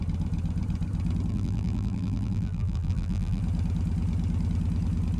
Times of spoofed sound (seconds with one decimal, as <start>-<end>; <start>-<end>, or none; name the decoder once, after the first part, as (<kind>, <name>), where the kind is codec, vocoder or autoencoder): 1.3-3.4 (vocoder, BigVGAN v2)